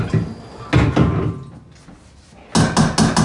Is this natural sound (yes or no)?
yes